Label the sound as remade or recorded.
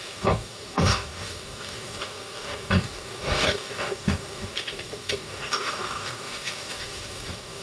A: remade